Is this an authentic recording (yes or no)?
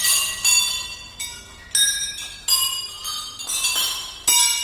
yes